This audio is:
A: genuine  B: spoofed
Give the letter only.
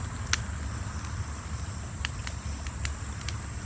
A